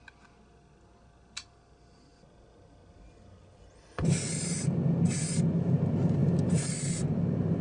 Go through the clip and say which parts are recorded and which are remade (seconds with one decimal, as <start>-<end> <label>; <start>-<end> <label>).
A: 0.0-7.6 recorded